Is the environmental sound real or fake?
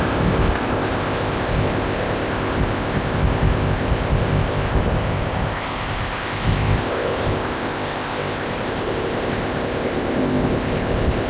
fake